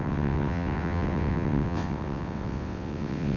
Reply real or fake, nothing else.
fake